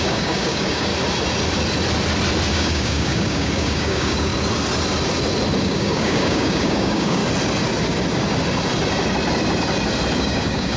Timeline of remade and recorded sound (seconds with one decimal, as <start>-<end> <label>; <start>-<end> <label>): 0.0-0.9 remade; 0.9-2.5 recorded; 2.5-4.3 remade; 4.3-5.6 recorded; 5.6-7.2 remade; 7.2-10.2 recorded; 10.2-10.8 remade